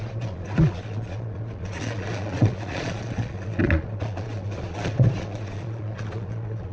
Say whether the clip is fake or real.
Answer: fake